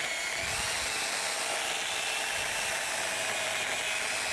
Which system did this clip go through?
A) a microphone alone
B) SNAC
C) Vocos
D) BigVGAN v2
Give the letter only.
A